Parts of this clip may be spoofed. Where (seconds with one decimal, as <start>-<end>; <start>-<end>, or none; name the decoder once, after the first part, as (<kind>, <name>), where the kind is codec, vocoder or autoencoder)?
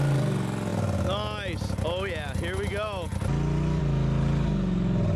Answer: none